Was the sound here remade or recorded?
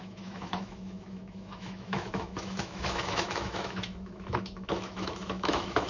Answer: remade